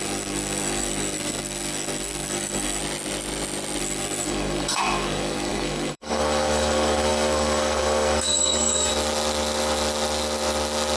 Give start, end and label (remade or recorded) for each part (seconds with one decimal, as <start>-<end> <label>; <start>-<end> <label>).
0.0-2.8 remade; 2.8-3.8 recorded; 3.8-8.9 remade; 8.9-11.0 recorded